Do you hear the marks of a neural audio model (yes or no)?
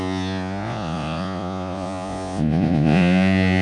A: yes